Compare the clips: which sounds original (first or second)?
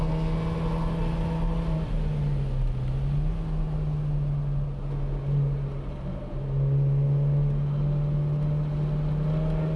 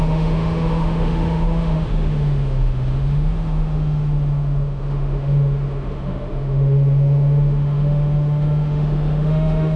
first